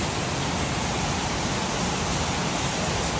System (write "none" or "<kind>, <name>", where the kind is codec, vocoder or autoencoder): none